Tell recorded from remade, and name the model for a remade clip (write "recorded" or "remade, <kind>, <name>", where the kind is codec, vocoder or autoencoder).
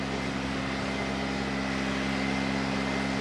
recorded